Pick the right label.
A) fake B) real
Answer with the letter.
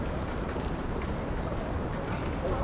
A